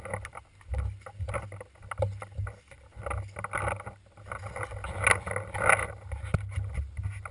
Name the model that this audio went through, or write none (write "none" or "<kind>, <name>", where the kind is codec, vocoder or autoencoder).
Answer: none